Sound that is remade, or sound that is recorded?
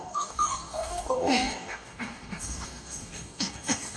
remade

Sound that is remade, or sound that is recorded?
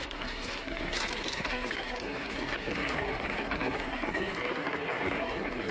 remade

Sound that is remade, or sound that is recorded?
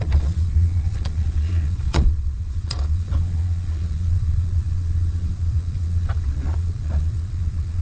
remade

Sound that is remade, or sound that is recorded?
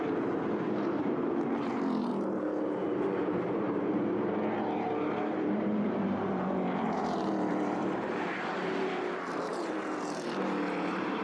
remade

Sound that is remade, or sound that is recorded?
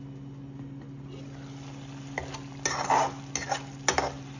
recorded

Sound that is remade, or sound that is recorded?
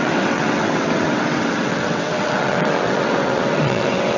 remade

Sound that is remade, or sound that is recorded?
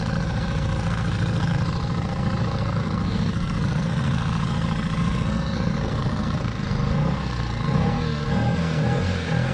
remade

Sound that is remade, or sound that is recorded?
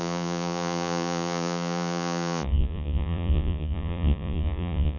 remade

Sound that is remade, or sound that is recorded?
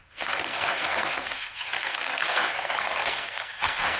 remade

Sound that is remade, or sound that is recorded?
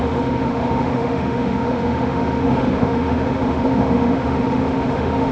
remade